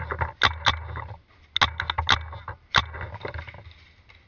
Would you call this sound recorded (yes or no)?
yes